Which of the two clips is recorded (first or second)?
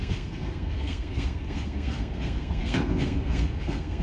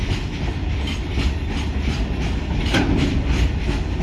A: second